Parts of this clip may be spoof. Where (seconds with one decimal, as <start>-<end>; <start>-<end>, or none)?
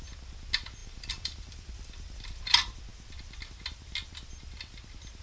0.8-2.4